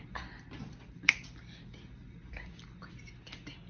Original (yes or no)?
yes